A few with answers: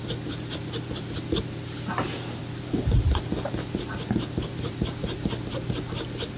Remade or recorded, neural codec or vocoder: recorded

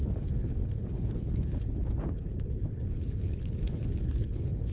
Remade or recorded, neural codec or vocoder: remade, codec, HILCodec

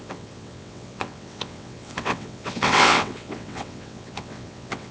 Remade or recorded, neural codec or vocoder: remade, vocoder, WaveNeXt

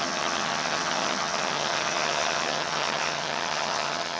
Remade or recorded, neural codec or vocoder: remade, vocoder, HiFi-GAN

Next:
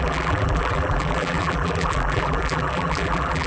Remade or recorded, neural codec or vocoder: remade, vocoder, BigVGAN v2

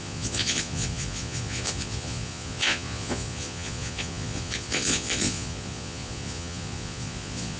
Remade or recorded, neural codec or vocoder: remade, vocoder, Vocos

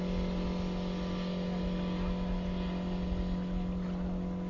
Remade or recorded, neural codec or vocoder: recorded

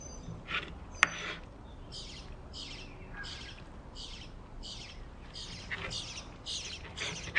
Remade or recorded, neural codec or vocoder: recorded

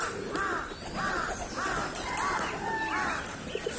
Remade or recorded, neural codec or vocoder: recorded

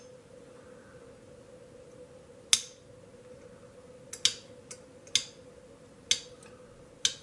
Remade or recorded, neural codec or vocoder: recorded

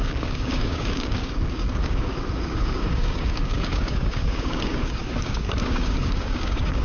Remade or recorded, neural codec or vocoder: remade, codec, DAC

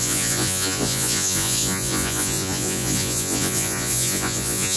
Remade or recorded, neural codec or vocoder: remade, vocoder, Vocos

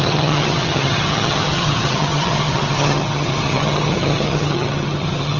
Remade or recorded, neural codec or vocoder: remade, vocoder, HiFi-GAN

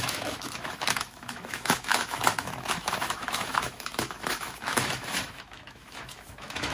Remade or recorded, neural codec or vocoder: remade, autoencoder, DAC-VAE